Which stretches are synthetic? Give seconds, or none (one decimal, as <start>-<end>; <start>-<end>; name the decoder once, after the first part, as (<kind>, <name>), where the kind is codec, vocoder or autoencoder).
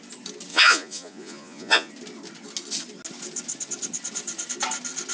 0.5-1.9 (vocoder, Vocos)